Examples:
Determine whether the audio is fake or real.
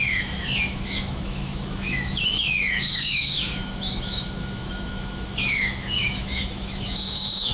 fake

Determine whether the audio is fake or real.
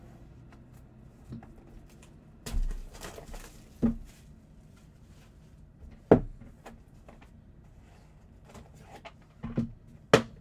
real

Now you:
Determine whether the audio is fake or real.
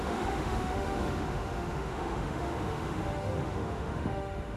fake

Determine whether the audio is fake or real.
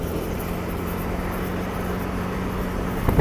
real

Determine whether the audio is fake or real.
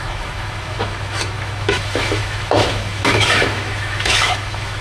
fake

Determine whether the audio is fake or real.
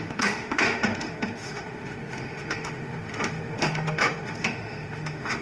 fake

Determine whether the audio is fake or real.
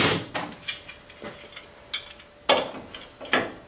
real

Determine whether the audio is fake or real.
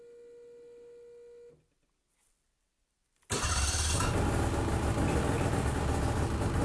real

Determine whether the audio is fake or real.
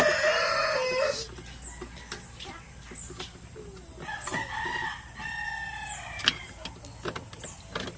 real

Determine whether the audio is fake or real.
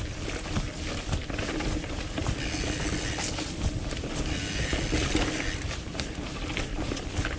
real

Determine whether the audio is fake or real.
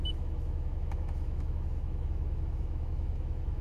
fake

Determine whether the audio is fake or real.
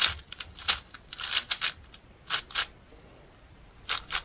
real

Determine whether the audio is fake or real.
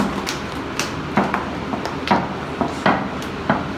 real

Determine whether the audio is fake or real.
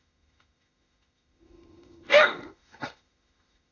fake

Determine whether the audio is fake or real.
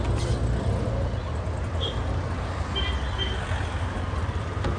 real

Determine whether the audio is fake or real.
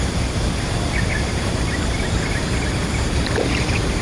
real